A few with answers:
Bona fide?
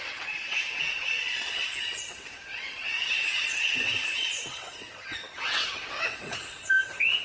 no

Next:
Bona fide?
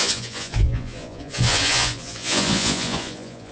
no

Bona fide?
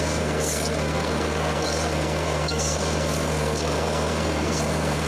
no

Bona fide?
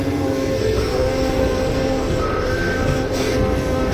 no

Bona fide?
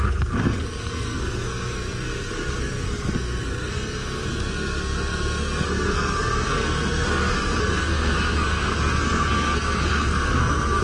no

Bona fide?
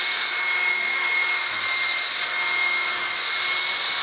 yes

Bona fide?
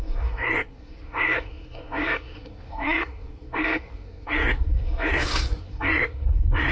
no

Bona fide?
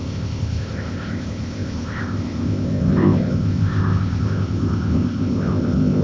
no